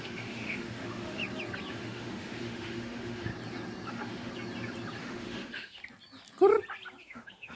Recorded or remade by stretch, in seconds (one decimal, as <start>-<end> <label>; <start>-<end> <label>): 0.0-1.2 remade; 1.2-1.7 recorded; 1.7-3.3 remade; 3.3-3.9 recorded; 3.9-4.3 remade; 4.3-5.0 recorded; 5.0-5.8 remade; 5.8-7.0 recorded; 7.0-7.6 remade